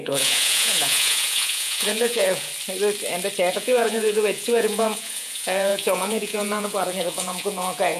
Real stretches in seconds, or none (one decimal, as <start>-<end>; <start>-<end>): 2.5-3.5